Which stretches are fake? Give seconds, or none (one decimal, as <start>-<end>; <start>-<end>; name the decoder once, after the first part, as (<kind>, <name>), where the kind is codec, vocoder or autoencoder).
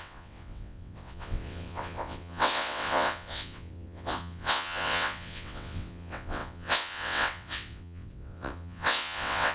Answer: 0.0-9.5 (vocoder, WaveNeXt)